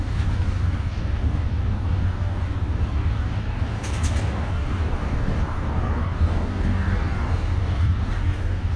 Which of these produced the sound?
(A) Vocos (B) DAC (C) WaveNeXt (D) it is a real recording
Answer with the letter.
B